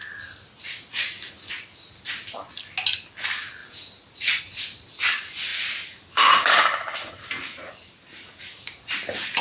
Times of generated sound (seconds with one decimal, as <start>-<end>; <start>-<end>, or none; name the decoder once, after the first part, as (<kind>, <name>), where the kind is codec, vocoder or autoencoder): 5.5-7.7 (vocoder, BigVGAN v2)

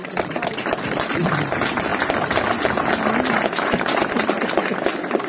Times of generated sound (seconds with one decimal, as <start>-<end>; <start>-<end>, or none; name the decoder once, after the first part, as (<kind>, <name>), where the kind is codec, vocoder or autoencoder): 0.0-1.9 (vocoder, BigVGAN v2); 3.3-5.3

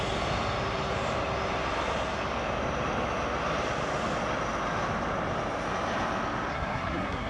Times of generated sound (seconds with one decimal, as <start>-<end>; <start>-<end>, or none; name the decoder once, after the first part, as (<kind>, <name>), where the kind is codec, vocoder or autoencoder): 6.5-7.3 (codec, SNAC)

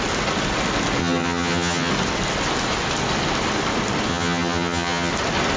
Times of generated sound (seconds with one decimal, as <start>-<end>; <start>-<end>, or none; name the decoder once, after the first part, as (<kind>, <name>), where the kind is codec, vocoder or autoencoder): 1.0-1.9 (vocoder, HiFi-GAN); 4.1-5.1

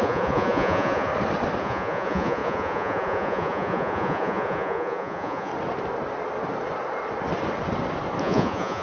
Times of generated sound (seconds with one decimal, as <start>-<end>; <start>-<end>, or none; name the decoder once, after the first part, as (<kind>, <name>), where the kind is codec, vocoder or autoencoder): 0.0-1.1 (vocoder, Vocos); 1.6-5.5; 8.2-8.8

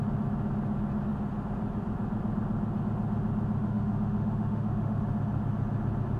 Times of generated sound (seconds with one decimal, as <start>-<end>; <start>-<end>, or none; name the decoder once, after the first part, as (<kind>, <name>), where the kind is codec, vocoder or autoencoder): 3.6-5.0 (autoencoder, DAC-VAE)

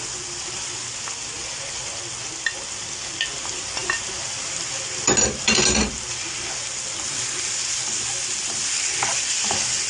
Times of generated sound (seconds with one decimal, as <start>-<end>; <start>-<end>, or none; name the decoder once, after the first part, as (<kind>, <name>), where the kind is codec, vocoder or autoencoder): none

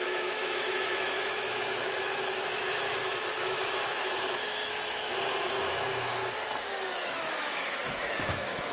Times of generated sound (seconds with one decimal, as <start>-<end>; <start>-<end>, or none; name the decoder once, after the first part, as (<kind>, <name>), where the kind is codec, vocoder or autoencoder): 0.0-6.1 (autoencoder, DAC-VAE); 7.0-8.7